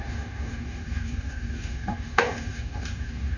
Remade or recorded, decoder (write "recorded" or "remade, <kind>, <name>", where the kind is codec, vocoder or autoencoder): remade, codec, DAC